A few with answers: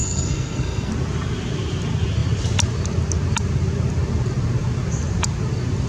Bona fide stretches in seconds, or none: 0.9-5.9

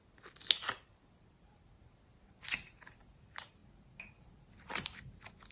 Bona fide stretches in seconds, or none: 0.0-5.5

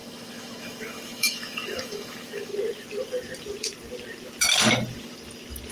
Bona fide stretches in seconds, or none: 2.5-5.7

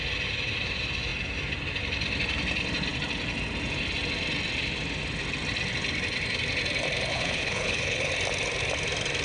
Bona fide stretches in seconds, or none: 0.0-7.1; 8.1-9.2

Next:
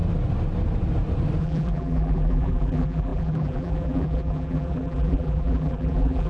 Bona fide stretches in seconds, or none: 0.0-1.4

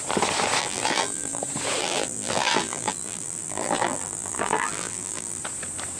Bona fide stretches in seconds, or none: 0.0-0.6; 1.4-1.8; 5.4-6.0

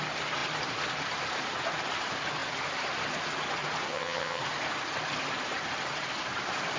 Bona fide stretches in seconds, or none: 0.0-3.9; 4.4-6.8